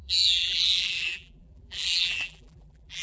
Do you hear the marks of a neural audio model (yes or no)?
yes